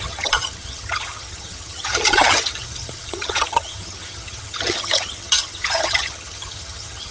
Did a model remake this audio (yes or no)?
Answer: yes